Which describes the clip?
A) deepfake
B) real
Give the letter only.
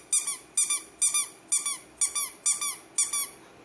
B